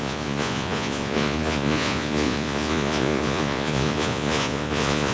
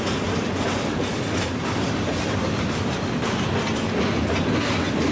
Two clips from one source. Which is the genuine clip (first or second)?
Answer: second